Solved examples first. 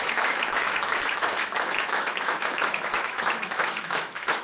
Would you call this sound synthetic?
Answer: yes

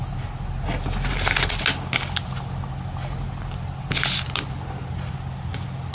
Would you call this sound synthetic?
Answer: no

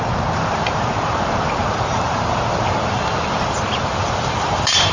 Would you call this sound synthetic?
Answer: yes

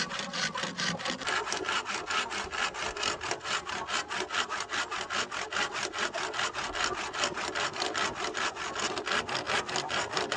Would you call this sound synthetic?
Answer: no